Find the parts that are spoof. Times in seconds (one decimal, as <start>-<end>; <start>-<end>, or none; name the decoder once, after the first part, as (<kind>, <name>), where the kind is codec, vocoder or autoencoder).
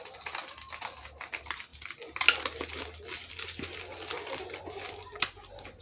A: none